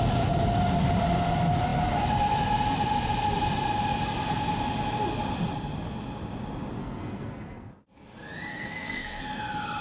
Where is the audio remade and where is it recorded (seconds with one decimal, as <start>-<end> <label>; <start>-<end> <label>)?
0.0-6.8 recorded; 6.8-7.7 remade; 7.7-8.5 recorded; 8.5-9.2 remade; 9.2-9.8 recorded